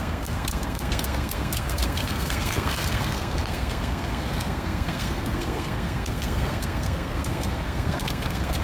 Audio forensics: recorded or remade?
remade